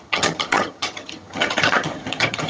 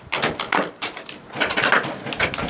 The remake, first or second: first